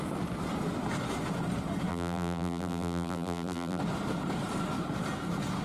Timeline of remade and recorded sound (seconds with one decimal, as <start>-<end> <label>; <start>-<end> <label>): 0.0-1.9 recorded; 1.9-3.8 remade; 3.8-5.6 recorded